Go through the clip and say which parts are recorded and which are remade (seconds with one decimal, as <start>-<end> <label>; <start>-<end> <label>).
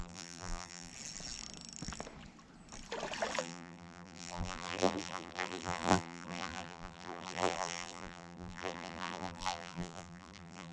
0.0-0.9 remade; 0.9-3.4 recorded; 3.4-10.7 remade